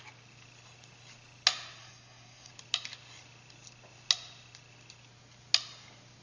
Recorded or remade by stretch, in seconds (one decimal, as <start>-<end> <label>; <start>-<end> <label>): 0.0-1.8 recorded; 1.8-2.5 remade; 2.5-6.2 recorded